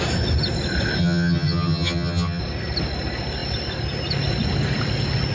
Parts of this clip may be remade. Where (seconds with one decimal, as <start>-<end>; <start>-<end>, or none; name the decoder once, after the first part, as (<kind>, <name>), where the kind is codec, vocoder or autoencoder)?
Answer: 1.0-2.4 (vocoder, HiFi-GAN)